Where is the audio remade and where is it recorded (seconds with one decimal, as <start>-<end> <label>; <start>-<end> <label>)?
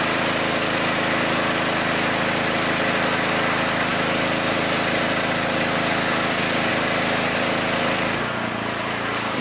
0.0-3.9 recorded; 3.9-5.0 remade; 5.0-9.4 recorded